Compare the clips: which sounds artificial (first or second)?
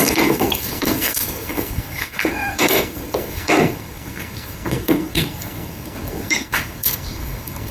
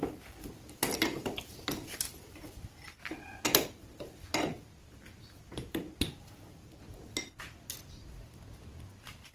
first